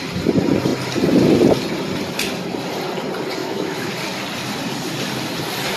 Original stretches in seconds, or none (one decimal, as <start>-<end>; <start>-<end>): 0.0-3.4; 3.9-5.8